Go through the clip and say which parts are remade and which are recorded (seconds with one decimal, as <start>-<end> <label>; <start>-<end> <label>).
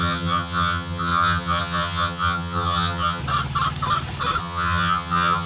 0.0-3.2 remade; 3.2-4.4 recorded; 4.4-5.5 remade